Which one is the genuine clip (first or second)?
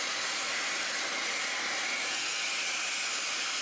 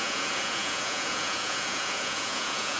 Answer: first